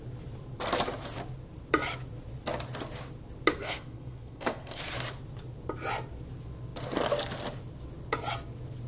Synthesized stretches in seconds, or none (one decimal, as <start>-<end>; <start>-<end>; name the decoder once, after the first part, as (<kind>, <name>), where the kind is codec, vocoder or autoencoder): 3.5-4.8 (codec, SNAC)